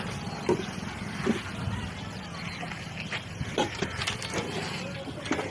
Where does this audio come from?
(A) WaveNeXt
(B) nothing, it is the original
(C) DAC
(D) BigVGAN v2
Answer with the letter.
B